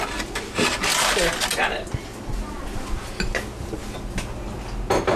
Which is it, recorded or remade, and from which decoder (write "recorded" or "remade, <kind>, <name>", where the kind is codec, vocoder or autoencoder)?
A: recorded